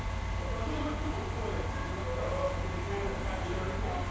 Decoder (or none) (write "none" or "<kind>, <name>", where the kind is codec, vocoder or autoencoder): none